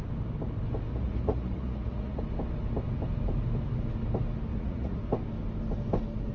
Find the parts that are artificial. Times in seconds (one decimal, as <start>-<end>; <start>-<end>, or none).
0.9-2.2; 4.5-5.0

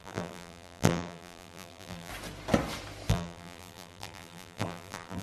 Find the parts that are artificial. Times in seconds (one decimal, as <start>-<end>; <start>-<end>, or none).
0.0-2.1; 3.1-5.2

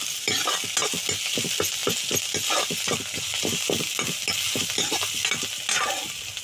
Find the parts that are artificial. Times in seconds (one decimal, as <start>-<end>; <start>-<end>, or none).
none

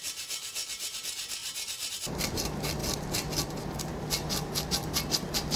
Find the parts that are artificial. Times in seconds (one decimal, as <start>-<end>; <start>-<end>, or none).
none

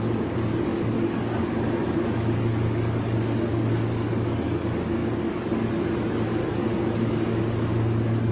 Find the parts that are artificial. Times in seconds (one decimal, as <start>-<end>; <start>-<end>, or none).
0.0-8.3

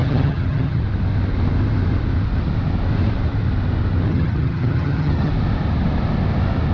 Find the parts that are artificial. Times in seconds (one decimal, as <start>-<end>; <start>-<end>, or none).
0.0-0.8; 4.1-5.3